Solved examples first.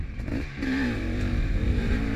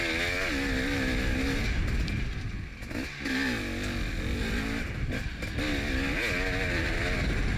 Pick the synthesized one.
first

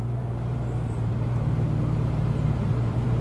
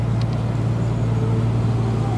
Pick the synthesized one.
first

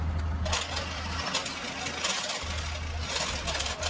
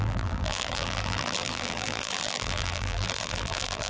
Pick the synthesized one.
second